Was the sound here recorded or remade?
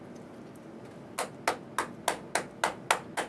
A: recorded